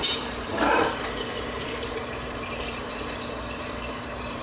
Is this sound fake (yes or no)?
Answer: yes